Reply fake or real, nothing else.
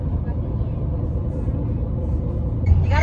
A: real